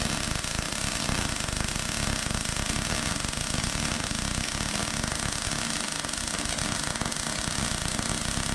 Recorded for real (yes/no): yes